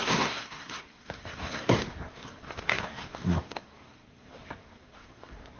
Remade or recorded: remade